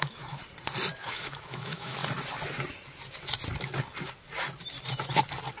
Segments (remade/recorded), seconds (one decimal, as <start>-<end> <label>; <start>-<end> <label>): 0.0-0.4 remade; 0.4-1.0 recorded; 1.0-2.0 remade; 2.0-5.6 recorded